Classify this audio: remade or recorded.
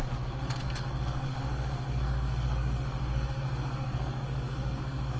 remade